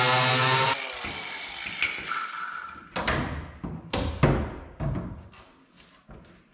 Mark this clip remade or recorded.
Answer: recorded